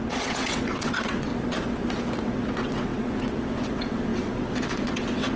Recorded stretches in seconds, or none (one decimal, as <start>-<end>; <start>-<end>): 1.3-2.2